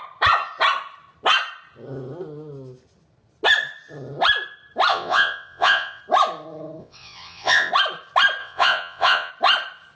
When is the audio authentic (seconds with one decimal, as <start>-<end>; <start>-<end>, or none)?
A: 0.0-4.9; 6.0-6.8; 7.7-8.4; 9.3-10.0